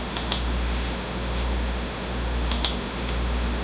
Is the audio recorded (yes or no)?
no